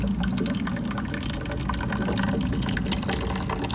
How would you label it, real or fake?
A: real